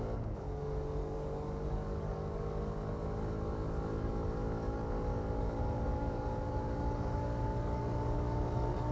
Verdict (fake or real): fake